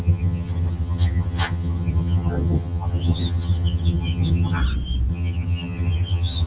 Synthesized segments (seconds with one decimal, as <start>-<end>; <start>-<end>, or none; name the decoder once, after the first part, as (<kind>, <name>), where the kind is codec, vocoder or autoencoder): 0.0-4.6 (vocoder, HiFi-GAN); 5.1-6.5